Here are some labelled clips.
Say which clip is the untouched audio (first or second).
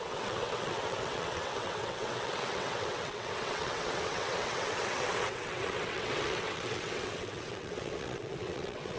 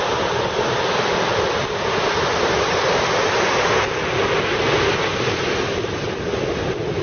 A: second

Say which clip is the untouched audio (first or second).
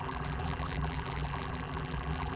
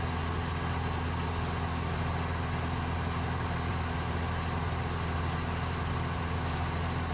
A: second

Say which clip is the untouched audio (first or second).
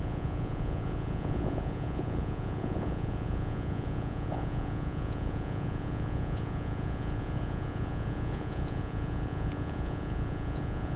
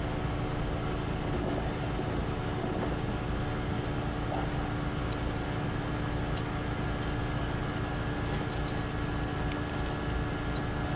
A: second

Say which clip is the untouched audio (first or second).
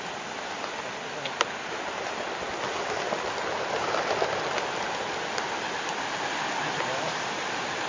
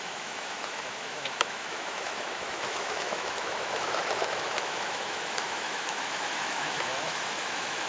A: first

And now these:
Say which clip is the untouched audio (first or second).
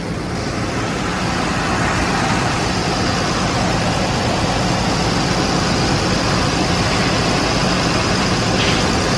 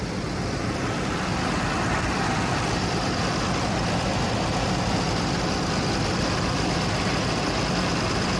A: first